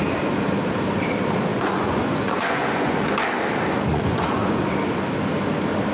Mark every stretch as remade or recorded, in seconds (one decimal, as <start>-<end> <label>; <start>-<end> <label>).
0.0-1.5 recorded; 1.5-3.1 remade; 3.1-3.9 recorded; 3.9-4.6 remade; 4.6-5.9 recorded